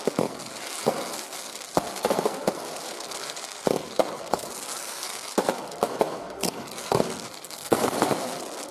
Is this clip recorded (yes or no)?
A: no